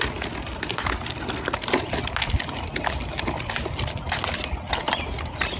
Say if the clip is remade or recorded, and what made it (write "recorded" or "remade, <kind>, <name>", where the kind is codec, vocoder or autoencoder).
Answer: recorded